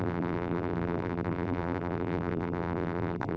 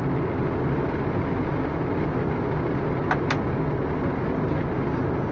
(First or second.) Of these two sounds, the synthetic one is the first